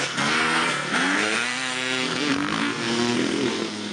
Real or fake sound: fake